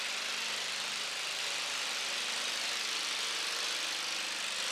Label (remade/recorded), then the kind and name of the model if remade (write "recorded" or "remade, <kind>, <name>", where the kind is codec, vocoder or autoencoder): recorded